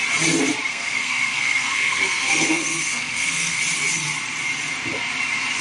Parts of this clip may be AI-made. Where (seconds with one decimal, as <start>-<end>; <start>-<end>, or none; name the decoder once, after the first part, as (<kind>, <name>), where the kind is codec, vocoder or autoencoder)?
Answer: 0.7-3.6 (codec, SNAC)